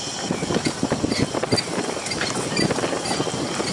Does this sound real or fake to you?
real